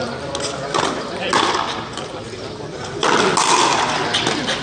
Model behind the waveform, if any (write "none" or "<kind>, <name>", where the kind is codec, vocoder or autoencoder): none